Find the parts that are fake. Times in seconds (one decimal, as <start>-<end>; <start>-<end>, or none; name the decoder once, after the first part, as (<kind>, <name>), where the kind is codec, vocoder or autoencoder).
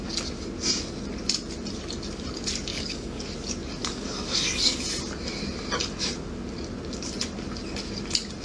2.7-3.2 (codec, DAC); 3.8-4.8